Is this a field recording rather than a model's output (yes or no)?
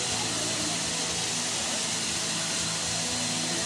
yes